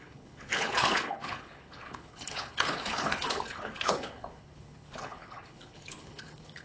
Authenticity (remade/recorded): remade